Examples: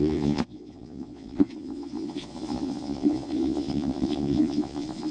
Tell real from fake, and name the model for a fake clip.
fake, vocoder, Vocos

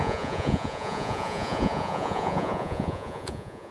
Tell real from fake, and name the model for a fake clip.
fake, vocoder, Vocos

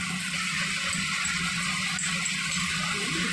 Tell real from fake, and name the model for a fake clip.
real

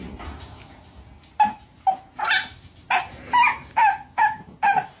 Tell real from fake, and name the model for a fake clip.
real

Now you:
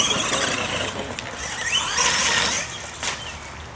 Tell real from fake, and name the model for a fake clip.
real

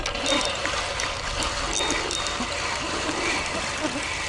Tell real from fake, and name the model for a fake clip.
real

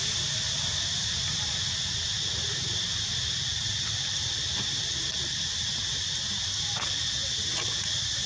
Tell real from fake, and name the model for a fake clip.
real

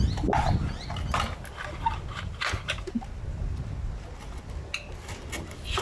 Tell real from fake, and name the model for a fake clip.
real